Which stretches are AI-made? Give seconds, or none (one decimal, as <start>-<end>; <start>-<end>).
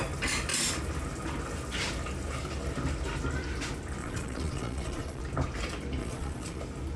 4.0-5.2; 6.0-6.6